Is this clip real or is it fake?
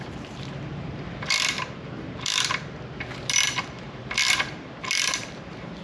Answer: real